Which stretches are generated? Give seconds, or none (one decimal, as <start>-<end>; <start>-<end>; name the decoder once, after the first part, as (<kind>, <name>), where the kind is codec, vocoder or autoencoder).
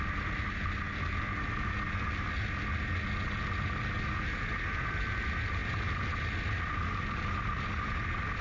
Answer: none